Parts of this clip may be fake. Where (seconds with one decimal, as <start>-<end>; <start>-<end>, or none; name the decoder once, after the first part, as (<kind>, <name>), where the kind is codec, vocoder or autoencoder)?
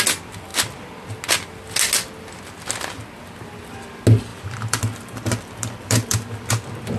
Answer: 4.3-6.3 (vocoder, BigVGAN v2)